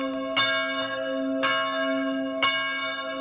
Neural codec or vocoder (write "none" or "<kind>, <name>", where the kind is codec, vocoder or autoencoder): none